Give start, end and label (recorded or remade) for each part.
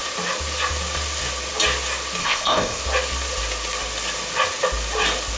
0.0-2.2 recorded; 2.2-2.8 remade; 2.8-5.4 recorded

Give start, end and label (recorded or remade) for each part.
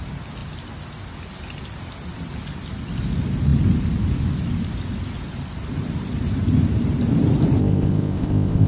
0.0-7.6 recorded; 7.6-8.7 remade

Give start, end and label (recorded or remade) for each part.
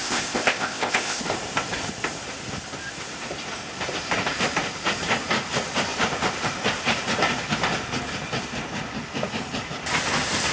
0.0-1.2 remade; 1.2-10.5 recorded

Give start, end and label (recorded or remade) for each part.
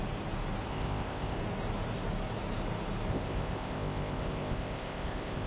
0.0-0.7 recorded; 0.7-1.4 remade; 1.4-3.1 recorded; 3.1-5.5 remade